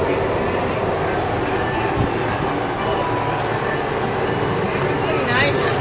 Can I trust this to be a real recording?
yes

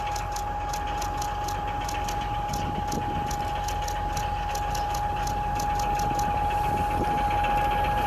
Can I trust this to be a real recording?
yes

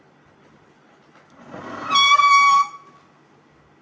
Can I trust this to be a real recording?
yes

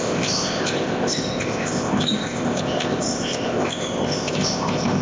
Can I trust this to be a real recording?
no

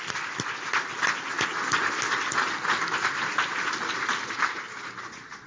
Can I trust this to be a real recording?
yes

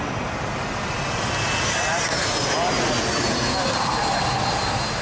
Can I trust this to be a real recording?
yes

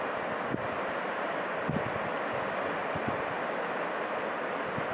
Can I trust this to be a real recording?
yes